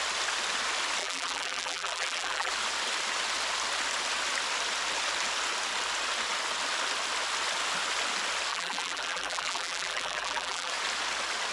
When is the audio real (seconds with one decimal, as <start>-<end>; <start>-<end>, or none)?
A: 0.0-1.0; 2.5-8.5; 10.7-11.5